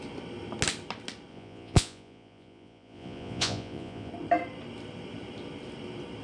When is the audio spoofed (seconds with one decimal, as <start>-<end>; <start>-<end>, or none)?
1.3-4.1